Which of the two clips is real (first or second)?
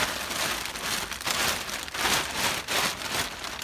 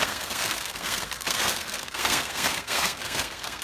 first